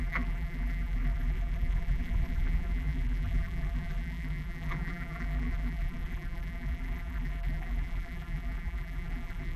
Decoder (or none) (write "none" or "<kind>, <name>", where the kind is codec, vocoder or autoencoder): vocoder, BigVGAN v2